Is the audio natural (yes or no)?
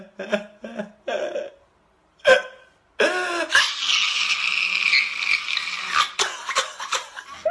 yes